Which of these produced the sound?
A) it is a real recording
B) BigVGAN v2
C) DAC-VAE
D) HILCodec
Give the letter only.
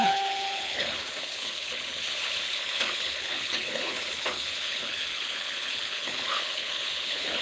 D